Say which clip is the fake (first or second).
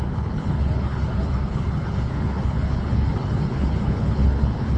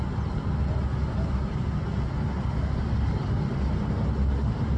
first